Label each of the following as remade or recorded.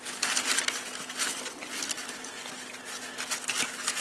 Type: recorded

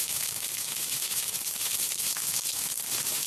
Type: remade